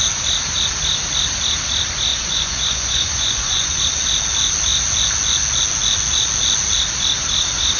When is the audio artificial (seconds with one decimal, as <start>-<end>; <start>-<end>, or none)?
2.1-3.8